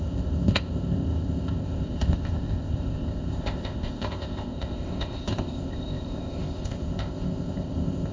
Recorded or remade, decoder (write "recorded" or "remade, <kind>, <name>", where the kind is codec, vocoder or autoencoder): remade, codec, ZipCodec